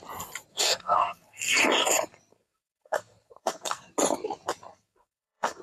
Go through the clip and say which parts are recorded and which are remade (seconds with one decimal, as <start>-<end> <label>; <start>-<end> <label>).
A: 0.0-0.5 recorded; 0.5-1.6 remade; 1.6-2.3 recorded; 2.3-3.9 remade; 3.9-4.7 recorded; 4.7-5.6 remade